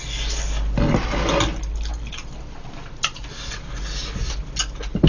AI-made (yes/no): no